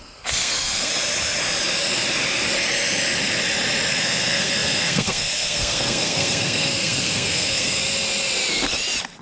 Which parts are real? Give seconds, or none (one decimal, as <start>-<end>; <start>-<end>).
0.9-3.9; 7.8-9.2